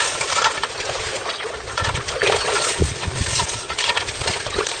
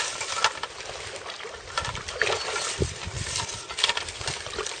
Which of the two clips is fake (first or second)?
first